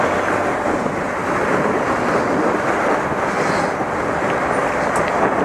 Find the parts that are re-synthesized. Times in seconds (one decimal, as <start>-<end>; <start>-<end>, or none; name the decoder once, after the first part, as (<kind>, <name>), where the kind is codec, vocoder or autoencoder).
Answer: none